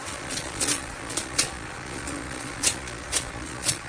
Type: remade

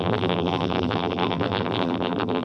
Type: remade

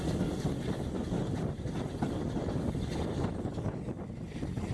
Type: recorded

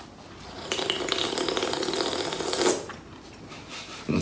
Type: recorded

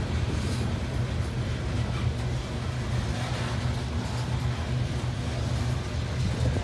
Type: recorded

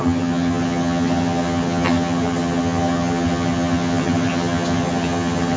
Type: remade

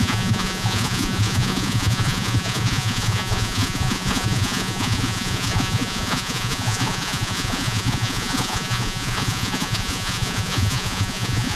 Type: remade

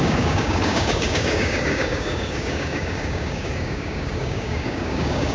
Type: remade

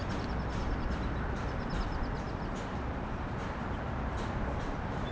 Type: recorded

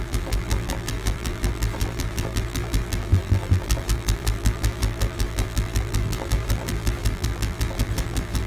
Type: remade